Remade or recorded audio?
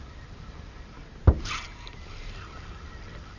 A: recorded